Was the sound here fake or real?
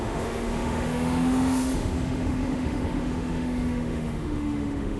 fake